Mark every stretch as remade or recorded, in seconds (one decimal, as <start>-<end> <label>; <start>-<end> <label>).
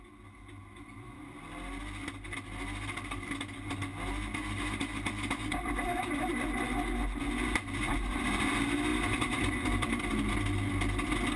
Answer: 0.0-0.6 recorded; 0.6-1.8 remade; 1.8-8.9 recorded; 8.9-10.0 remade; 10.0-11.4 recorded